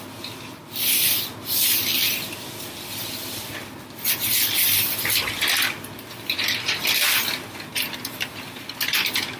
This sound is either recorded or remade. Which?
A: recorded